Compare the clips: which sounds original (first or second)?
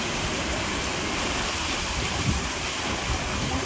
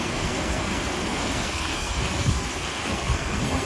first